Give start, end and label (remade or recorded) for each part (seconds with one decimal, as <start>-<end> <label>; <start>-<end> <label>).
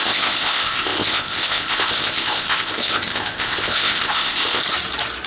0.0-4.6 remade; 4.6-5.3 recorded